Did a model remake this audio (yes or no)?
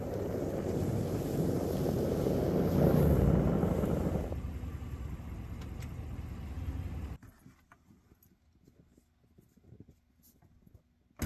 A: no